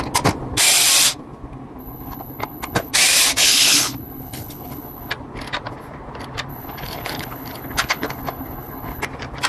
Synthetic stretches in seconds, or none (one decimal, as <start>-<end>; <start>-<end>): 1.8-2.9; 3.4-5.1; 6.5-9.0